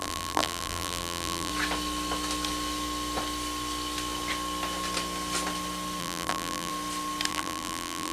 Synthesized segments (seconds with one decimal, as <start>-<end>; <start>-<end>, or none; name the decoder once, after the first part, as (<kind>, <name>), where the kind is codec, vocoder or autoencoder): 0.0-1.5 (vocoder, BigVGAN v2); 6.0-6.7; 7.3-8.1